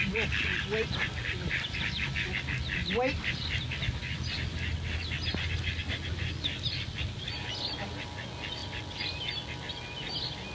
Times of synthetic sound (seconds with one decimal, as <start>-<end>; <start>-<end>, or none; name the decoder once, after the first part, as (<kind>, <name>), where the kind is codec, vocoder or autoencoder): none